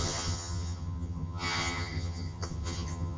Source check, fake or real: fake